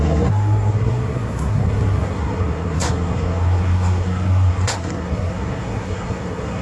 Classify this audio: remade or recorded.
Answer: remade